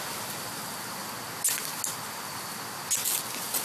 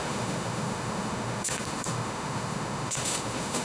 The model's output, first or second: second